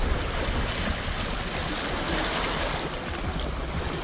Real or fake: real